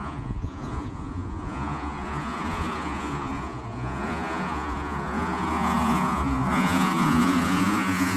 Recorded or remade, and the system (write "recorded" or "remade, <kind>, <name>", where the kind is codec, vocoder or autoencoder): remade, vocoder, Vocos